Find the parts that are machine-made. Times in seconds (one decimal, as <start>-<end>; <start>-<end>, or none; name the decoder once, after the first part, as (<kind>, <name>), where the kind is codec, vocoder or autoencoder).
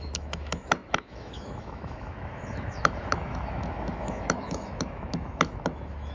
0.0-6.1 (autoencoder, DAC-VAE)